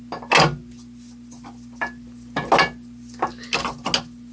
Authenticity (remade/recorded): recorded